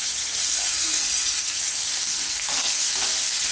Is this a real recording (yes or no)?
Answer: no